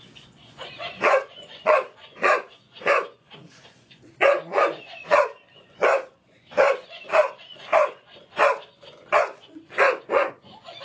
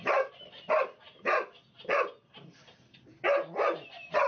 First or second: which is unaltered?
second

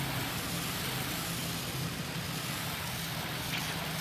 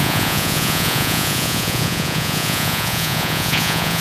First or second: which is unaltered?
first